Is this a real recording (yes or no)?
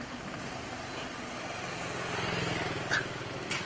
yes